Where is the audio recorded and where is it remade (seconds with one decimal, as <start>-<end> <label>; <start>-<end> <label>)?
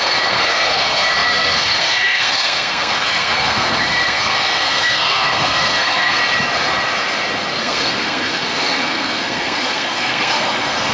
0.0-6.2 remade; 6.2-7.6 recorded; 7.6-10.9 remade